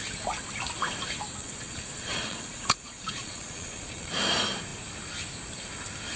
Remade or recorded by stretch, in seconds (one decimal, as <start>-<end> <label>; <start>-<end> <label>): 0.0-1.4 recorded; 1.4-4.1 remade; 4.1-6.2 recorded